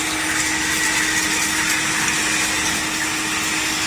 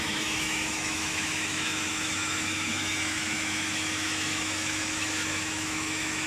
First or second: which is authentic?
first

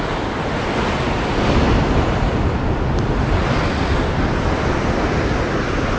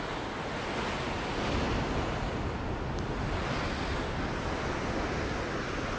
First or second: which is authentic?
second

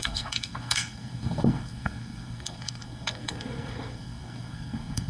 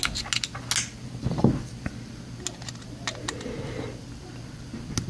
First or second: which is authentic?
second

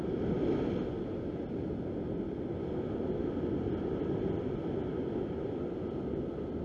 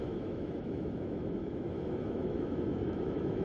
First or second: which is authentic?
first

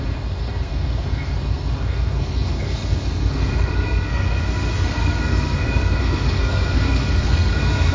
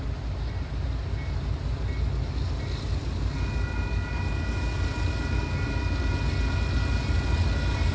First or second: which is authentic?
second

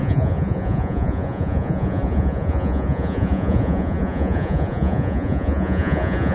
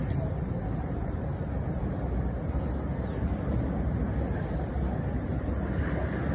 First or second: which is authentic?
second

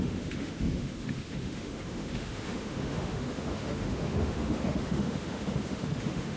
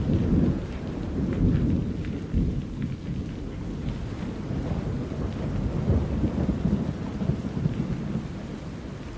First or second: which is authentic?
second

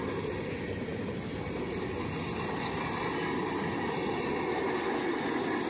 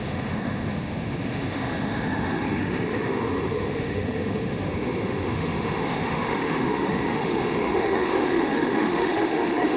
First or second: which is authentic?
first